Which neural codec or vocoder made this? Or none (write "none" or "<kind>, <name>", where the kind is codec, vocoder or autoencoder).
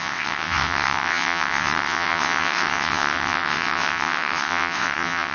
vocoder, WaveNeXt